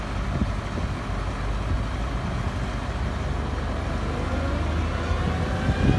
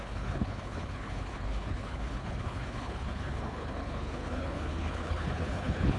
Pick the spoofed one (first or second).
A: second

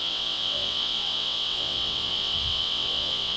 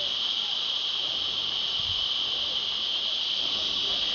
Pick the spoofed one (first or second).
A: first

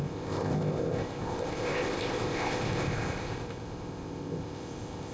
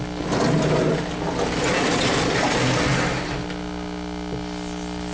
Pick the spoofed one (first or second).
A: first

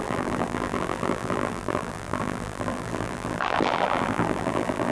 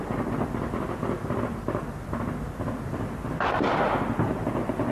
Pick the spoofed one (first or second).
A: first